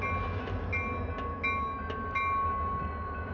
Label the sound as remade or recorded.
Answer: recorded